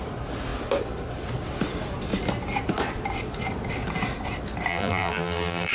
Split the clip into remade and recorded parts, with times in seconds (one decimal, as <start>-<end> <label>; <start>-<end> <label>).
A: 0.0-4.7 recorded; 4.7-5.7 remade